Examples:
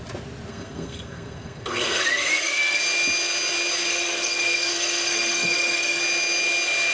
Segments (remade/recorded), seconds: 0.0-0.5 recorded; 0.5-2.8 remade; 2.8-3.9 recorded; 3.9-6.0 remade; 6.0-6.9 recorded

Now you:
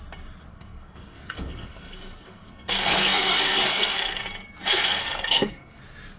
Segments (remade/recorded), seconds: 0.0-0.5 recorded; 0.5-4.2 remade; 4.2-4.7 recorded; 4.7-5.8 remade; 5.8-6.2 recorded